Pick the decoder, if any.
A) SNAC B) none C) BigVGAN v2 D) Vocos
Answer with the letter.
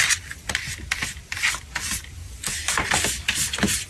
B